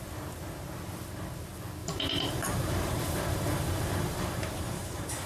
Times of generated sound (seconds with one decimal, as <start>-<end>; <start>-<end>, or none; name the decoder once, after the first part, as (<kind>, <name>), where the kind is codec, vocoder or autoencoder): 1.8-5.3 (vocoder, BigVGAN v2)